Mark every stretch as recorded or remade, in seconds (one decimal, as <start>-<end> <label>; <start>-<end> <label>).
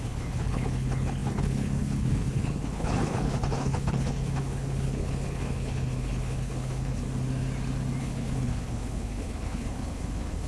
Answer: 0.0-7.0 remade; 7.0-8.0 recorded; 8.0-10.5 remade